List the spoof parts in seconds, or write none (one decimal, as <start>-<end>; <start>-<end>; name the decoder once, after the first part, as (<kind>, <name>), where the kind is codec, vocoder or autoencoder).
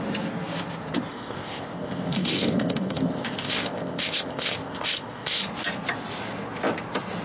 1.1-5.4 (codec, ZipCodec)